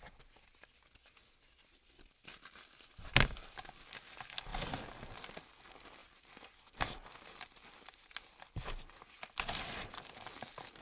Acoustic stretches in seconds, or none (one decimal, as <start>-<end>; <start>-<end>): 0.0-10.8